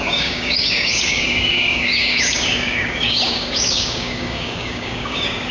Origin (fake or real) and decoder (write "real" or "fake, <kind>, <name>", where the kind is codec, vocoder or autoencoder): fake, codec, DAC